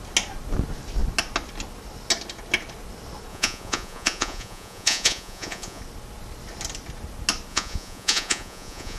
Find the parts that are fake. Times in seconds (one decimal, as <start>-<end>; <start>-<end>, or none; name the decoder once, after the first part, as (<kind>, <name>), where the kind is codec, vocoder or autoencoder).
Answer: 3.3-5.8 (vocoder, Vocos); 7.5-9.0